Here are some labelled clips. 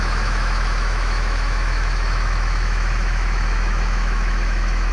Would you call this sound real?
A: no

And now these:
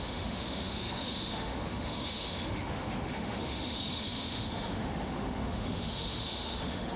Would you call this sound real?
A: no